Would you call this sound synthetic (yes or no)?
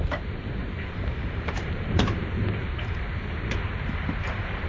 yes